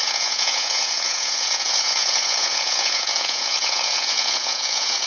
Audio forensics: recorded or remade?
remade